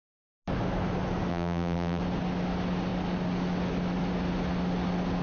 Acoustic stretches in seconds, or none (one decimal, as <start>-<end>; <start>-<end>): 0.0-1.3; 2.0-5.2